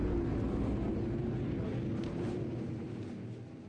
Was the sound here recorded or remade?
recorded